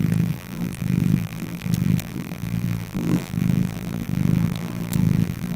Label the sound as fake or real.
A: fake